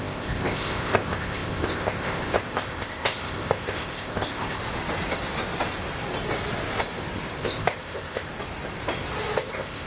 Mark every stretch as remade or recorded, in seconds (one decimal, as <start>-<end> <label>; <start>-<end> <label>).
0.0-4.6 remade; 4.6-7.4 recorded; 7.4-8.3 remade; 8.3-9.4 recorded; 9.4-9.9 remade